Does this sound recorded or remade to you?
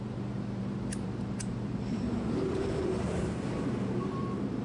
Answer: remade